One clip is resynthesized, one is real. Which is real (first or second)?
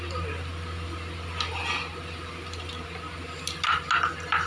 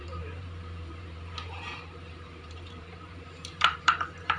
first